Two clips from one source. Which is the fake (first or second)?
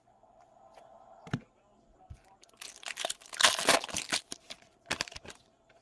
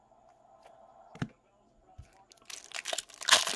first